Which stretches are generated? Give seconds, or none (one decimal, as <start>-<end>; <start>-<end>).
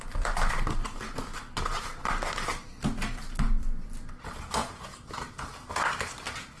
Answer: 4.6-5.7